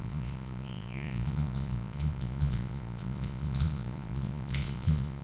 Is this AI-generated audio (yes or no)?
yes